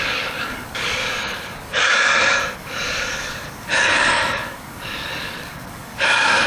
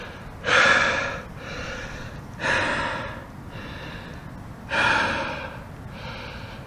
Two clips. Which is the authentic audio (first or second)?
second